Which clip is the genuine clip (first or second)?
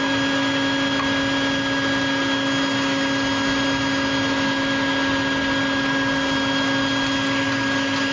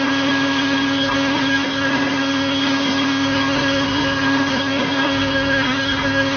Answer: first